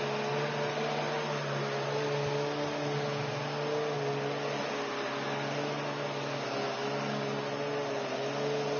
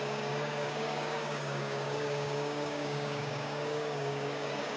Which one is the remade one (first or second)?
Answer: second